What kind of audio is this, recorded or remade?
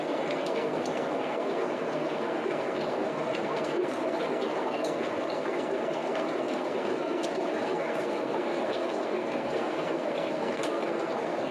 remade